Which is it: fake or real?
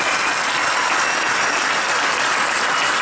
real